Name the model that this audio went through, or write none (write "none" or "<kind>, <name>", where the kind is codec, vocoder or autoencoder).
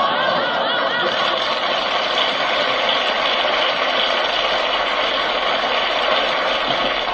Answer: none